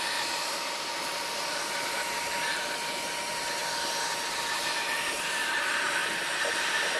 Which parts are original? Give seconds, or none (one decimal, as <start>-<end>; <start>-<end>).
0.0-7.0